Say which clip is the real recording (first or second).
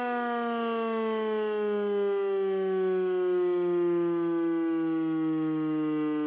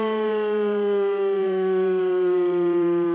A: first